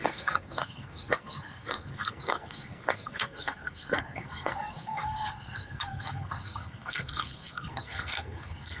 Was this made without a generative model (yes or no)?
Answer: no